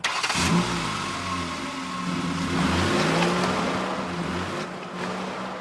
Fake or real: real